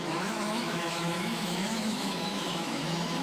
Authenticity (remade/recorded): remade